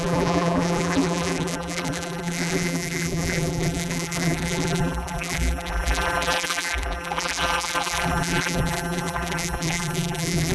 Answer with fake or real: fake